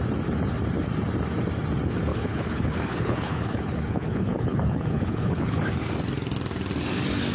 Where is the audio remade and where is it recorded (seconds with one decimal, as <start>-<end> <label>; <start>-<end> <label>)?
0.0-2.1 recorded; 2.1-5.6 remade; 5.6-7.3 recorded